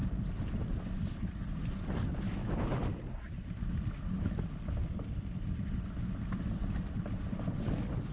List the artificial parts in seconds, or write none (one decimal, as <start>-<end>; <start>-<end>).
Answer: 0.0-2.4; 3.2-8.1